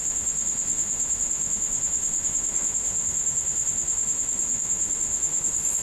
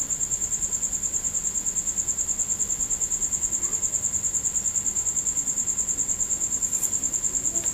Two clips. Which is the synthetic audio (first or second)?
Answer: first